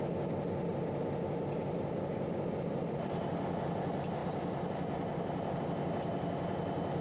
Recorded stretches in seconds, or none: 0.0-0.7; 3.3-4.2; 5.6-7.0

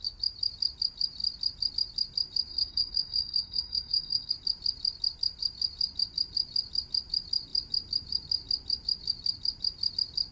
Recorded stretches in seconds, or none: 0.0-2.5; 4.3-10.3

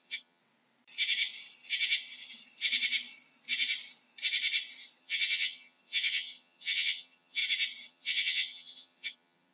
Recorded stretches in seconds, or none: 0.4-5.0; 7.4-7.9